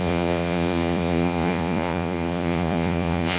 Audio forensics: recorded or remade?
remade